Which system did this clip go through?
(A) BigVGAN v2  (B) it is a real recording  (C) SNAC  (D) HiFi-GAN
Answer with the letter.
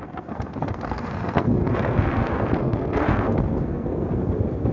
C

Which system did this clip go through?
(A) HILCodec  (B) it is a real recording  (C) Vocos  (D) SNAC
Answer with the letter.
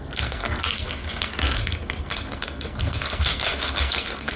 D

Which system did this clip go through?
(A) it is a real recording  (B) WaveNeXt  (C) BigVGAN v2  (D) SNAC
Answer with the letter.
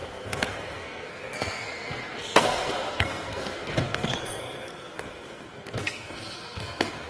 D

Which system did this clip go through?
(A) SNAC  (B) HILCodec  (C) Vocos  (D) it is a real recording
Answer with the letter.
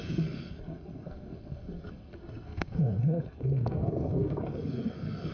A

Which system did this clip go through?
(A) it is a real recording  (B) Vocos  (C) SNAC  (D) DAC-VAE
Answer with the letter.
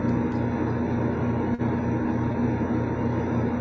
A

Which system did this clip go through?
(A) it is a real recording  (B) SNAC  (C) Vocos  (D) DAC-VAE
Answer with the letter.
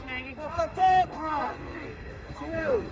B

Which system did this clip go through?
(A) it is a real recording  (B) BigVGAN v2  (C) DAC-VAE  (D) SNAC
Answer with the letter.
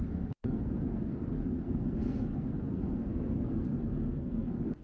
D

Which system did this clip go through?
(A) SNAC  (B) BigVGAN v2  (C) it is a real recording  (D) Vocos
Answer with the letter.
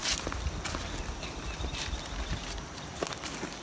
C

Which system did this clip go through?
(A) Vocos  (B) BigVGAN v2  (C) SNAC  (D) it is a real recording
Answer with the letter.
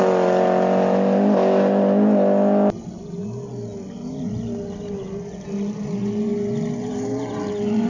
D